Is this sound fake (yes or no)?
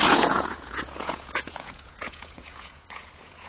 yes